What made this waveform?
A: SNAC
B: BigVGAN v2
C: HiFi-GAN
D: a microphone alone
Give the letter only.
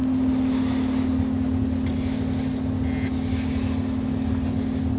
D